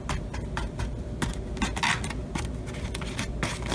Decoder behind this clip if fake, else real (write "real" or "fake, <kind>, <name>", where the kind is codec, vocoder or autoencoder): real